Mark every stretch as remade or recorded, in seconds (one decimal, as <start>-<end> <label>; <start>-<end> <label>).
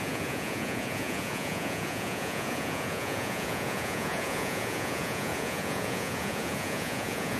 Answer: 0.0-7.4 remade